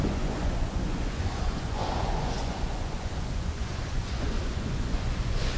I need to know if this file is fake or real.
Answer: fake